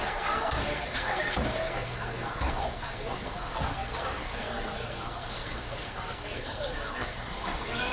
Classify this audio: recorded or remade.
remade